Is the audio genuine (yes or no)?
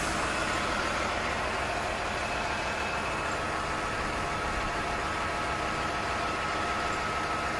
yes